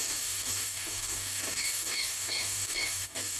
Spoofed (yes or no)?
yes